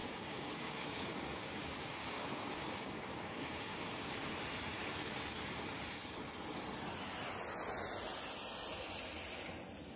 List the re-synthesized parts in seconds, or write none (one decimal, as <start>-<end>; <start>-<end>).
0.0-4.3; 4.8-5.5